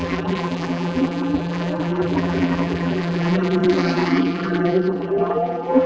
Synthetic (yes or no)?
yes